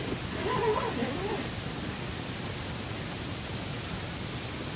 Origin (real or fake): real